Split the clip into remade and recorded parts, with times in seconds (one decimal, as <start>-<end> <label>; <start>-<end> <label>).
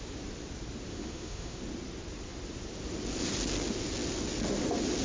0.0-0.9 recorded; 0.9-1.6 remade; 1.6-5.0 recorded